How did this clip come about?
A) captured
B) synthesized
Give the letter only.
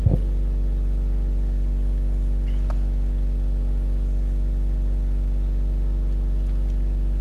A